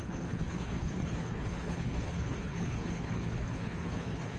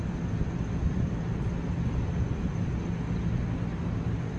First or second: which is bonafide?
second